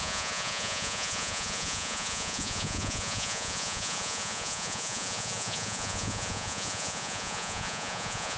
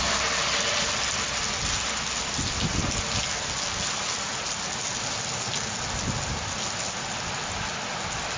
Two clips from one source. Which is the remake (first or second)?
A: first